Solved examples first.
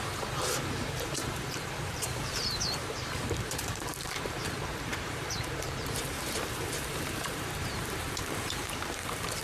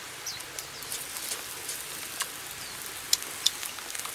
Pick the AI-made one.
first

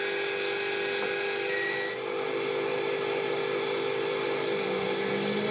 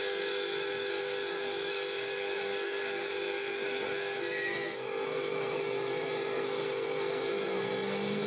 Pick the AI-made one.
second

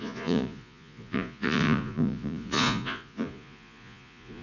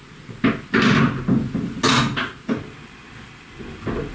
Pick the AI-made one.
first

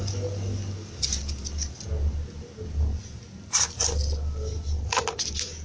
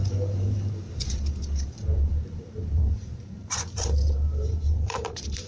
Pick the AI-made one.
second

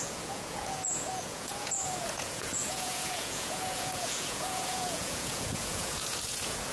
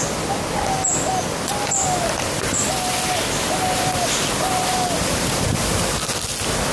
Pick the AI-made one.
first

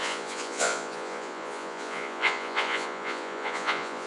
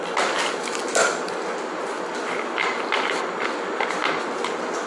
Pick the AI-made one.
first